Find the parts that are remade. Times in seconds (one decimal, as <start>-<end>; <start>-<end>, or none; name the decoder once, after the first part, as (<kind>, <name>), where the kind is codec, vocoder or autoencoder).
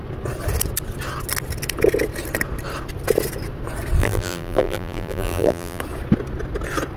4.0-5.8 (vocoder, BigVGAN v2)